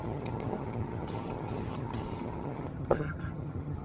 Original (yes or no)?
no